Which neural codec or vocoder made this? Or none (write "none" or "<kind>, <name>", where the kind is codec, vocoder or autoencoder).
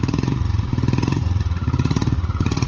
vocoder, Vocos